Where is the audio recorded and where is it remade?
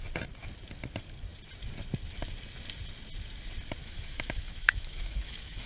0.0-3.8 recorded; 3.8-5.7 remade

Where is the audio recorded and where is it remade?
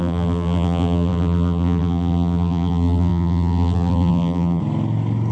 0.0-4.6 remade; 4.6-5.3 recorded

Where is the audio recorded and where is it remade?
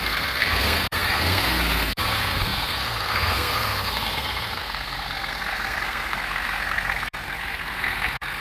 0.0-8.4 remade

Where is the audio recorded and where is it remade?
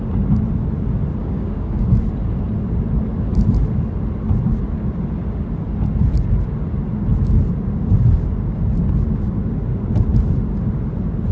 0.0-1.2 recorded; 1.2-2.0 remade; 2.0-11.3 recorded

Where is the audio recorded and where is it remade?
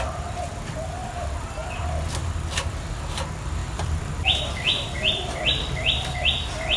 0.0-1.0 recorded; 1.0-1.8 remade; 1.8-2.2 recorded; 2.2-3.1 remade; 3.1-3.6 recorded; 3.6-6.8 remade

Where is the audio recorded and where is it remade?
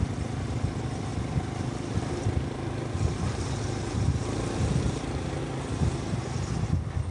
0.0-1.1 recorded; 1.1-5.4 remade; 5.4-7.1 recorded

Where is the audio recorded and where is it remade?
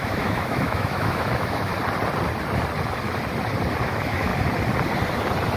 0.0-1.7 remade; 1.7-3.8 recorded; 3.8-4.3 remade; 4.3-5.6 recorded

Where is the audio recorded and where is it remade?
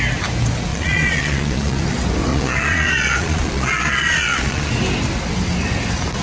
0.0-0.7 recorded; 0.7-1.8 remade; 1.8-2.3 recorded; 2.3-4.7 remade; 4.7-6.2 recorded